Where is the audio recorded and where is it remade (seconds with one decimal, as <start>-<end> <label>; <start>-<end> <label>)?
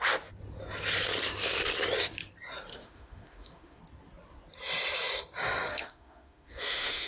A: 0.0-2.7 recorded; 2.7-3.8 remade; 3.8-5.7 recorded; 5.7-7.1 remade